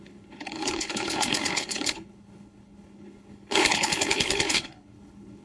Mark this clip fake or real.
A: fake